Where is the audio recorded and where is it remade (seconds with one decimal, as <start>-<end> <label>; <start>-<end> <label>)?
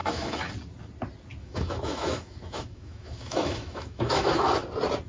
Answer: 0.0-0.5 remade; 0.5-1.4 recorded; 1.4-4.5 remade; 4.5-5.1 recorded